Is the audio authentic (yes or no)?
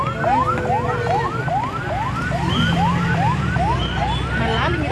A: yes